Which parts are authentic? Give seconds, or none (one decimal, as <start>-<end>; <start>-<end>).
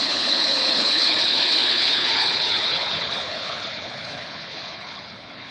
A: none